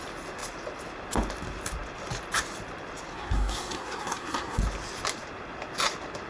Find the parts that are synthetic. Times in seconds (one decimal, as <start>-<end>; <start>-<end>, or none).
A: 3.1-4.6